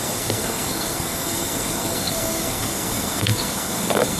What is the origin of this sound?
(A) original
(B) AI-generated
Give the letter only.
B